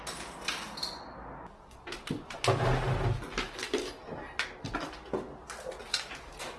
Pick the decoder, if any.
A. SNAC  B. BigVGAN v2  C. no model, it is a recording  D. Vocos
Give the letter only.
C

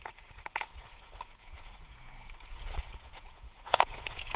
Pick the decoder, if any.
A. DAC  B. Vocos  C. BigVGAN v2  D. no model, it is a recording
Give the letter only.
B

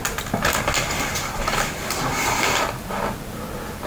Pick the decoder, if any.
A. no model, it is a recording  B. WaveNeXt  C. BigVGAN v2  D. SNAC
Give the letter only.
A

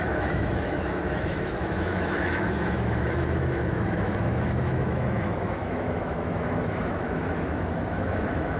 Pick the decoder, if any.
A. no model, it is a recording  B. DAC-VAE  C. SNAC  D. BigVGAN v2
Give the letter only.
B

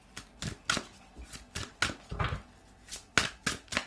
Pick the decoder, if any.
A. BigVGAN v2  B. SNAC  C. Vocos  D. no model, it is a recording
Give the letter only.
D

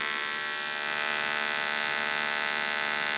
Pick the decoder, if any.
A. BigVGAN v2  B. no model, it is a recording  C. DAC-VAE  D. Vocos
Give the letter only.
B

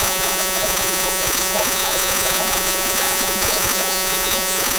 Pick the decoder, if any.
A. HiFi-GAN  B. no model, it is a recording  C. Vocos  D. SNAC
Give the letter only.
C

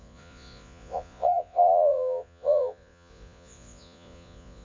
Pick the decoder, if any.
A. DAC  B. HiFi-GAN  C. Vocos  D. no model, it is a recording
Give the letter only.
C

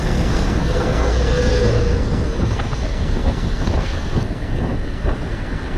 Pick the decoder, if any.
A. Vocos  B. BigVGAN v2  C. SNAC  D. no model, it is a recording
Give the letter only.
C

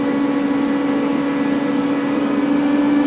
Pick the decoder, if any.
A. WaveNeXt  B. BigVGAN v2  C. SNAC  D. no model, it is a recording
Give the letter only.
D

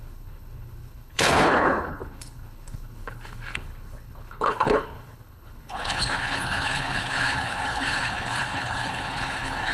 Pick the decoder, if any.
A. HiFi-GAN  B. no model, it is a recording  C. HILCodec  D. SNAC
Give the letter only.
C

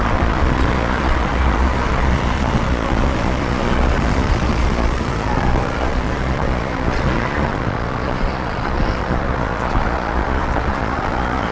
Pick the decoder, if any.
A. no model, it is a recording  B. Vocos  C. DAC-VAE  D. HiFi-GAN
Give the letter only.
B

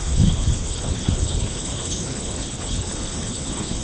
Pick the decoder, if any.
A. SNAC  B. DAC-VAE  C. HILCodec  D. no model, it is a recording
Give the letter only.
C